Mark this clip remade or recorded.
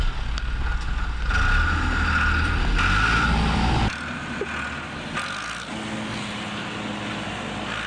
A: recorded